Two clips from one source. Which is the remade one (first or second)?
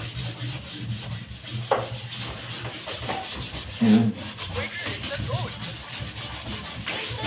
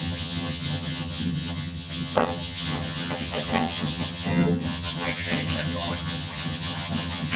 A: second